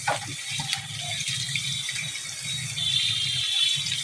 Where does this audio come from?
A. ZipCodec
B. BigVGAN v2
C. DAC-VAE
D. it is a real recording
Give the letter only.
D